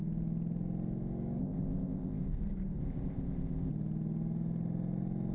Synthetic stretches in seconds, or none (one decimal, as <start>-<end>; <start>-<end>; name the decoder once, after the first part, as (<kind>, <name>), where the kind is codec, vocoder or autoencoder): 1.4-2.4 (codec, ZipCodec); 2.8-3.7